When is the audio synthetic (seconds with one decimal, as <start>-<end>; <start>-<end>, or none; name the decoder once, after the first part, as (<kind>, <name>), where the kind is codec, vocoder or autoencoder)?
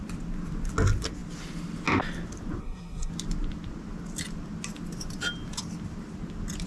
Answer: 2.6-3.1 (codec, SNAC)